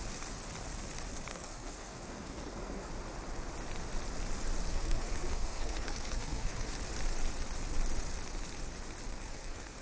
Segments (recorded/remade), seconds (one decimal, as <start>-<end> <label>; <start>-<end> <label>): 0.0-1.3 recorded; 1.3-2.9 remade; 2.9-4.7 recorded; 4.7-6.7 remade; 6.7-9.1 recorded; 9.1-9.8 remade